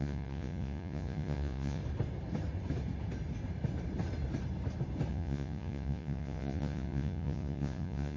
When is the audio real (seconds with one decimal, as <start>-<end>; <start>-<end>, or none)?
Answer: 1.8-5.1